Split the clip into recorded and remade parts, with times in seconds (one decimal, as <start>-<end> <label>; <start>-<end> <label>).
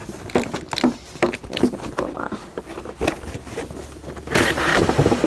0.0-5.3 recorded